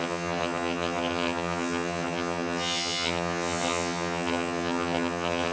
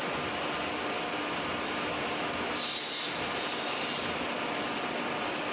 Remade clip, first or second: first